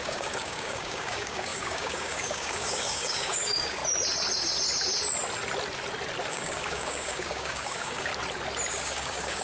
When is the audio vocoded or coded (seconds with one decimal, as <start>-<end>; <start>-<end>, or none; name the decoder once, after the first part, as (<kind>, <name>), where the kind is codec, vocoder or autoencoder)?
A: 0.0-3.8 (codec, DAC); 6.3-8.1; 8.7-9.4